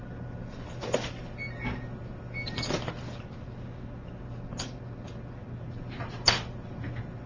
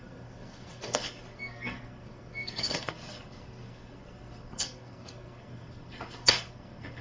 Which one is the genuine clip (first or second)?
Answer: first